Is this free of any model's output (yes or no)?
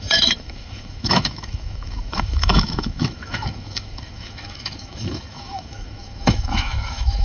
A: no